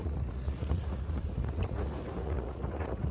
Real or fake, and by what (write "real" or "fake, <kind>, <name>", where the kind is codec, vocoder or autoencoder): fake, vocoder, Vocos